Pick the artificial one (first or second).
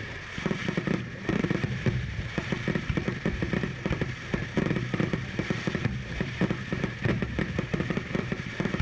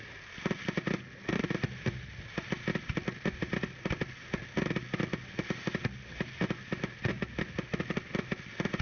first